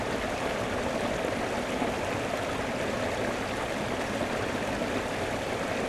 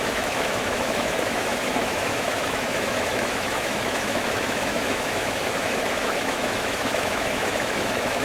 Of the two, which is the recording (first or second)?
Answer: first